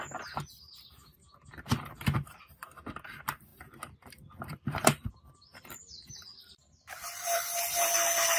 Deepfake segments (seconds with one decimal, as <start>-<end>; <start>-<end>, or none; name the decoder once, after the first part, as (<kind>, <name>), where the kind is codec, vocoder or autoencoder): 3.5-7.9 (vocoder, BigVGAN v2)